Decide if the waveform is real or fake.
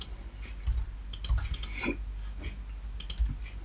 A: real